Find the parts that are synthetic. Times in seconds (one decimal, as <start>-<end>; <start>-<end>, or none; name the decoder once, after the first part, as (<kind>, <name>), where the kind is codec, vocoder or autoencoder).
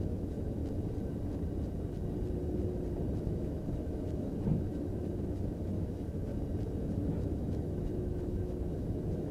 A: 0.0-0.6 (autoencoder, DAC-VAE); 3.2-6.3; 6.9-9.3